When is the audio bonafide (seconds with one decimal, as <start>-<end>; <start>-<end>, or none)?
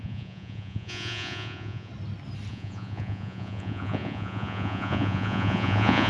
1.9-2.5